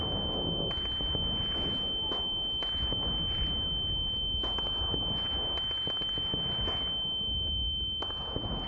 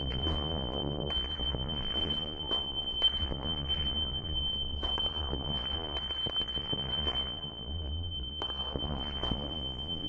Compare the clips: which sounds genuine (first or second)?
first